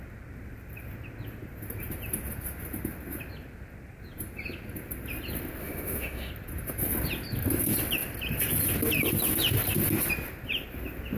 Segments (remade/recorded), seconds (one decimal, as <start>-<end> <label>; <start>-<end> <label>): 0.0-5.6 recorded; 5.6-6.3 remade; 6.3-11.2 recorded